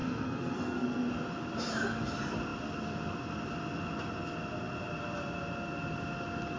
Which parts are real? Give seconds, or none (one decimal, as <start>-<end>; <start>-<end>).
1.1-6.6